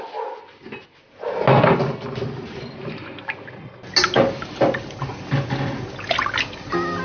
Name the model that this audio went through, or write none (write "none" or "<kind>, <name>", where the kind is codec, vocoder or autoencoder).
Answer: none